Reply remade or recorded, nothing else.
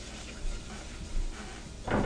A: recorded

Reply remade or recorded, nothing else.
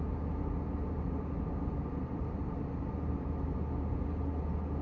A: recorded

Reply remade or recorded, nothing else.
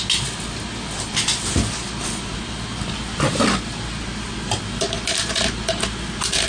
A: recorded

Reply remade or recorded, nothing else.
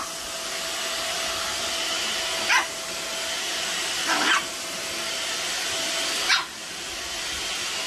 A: recorded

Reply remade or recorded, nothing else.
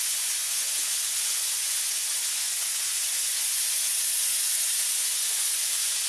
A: remade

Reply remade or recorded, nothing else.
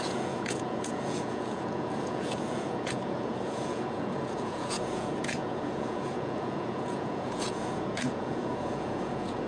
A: remade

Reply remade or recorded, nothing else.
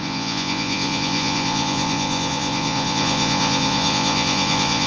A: remade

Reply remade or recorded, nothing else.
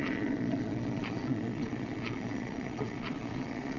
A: remade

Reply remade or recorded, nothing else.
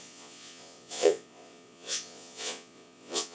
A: remade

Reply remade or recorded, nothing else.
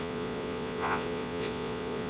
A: remade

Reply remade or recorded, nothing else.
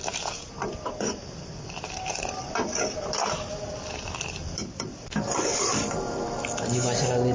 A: recorded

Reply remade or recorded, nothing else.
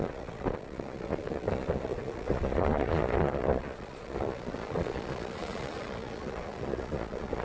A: remade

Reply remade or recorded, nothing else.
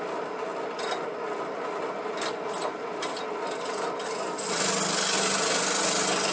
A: recorded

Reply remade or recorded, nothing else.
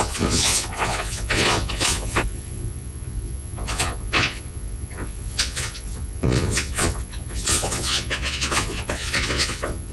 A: remade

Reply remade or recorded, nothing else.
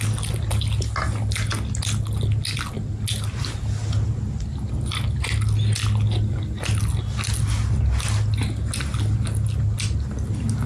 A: recorded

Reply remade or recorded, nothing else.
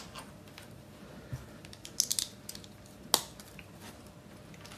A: recorded